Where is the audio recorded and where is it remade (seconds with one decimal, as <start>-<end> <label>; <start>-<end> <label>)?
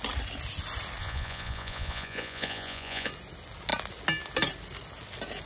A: 0.0-1.0 recorded; 1.0-3.1 remade; 3.1-5.5 recorded